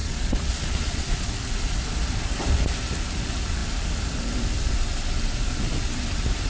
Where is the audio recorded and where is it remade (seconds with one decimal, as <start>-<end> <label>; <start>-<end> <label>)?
0.0-1.3 remade; 1.3-6.5 recorded